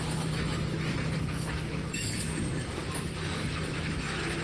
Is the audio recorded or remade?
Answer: remade